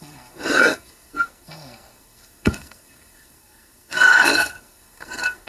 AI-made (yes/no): yes